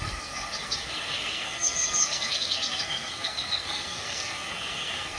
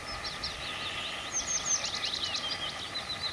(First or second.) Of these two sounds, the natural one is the second